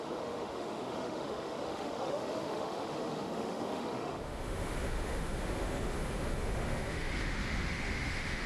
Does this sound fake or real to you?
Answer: fake